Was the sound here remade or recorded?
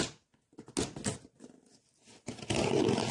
recorded